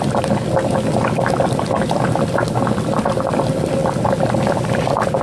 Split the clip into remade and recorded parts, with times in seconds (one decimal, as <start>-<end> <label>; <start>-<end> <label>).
0.0-5.2 recorded